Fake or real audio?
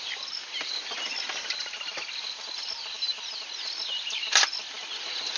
real